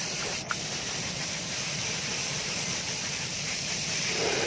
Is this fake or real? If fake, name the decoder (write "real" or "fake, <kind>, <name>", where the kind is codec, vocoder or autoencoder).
fake, vocoder, BigVGAN v2